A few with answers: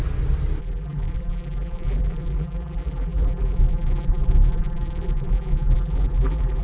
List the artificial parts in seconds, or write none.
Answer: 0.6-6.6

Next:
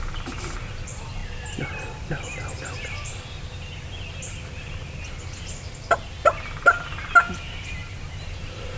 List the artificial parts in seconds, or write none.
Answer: none

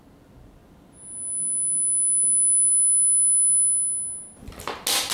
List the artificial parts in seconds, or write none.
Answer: none

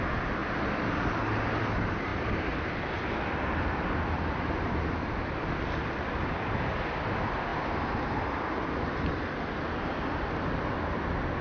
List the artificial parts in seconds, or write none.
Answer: 2.1-7.0

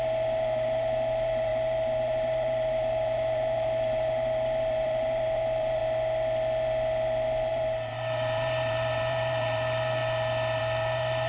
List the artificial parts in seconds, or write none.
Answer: 0.0-5.8; 7.5-10.0; 10.6-11.3

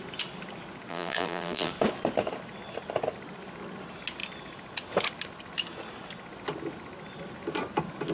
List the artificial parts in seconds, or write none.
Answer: 0.9-1.7